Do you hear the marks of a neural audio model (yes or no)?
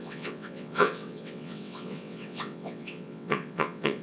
yes